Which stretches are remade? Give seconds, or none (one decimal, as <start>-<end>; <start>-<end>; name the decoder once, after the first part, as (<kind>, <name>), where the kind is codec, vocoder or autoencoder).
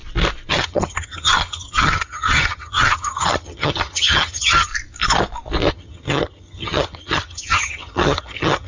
0.5-4.7 (vocoder, HiFi-GAN); 5.7-8.7